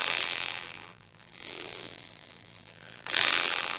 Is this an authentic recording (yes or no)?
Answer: no